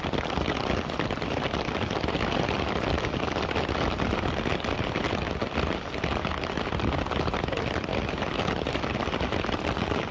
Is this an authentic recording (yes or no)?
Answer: yes